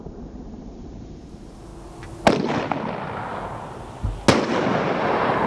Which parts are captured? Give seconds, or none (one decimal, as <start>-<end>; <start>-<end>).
1.7-5.0

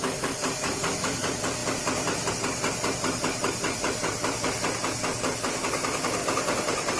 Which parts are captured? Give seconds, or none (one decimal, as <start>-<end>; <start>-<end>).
0.0-6.2

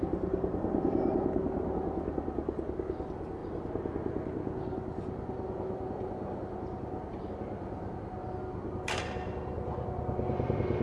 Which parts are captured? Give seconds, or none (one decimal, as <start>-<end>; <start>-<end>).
0.0-10.8

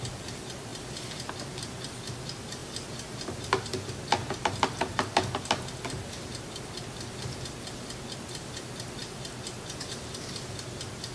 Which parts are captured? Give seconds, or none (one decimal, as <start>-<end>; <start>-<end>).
0.0-11.1